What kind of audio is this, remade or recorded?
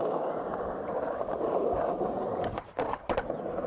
remade